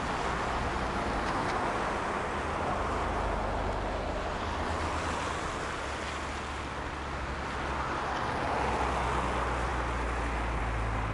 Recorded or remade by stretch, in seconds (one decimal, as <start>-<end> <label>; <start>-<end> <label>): 0.0-11.1 recorded